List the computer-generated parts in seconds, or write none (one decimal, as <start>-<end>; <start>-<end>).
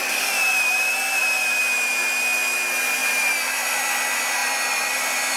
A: 0.0-1.6; 3.0-3.8; 4.4-5.4